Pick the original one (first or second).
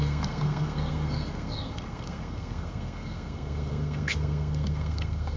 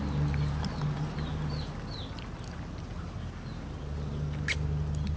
second